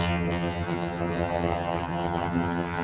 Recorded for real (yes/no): no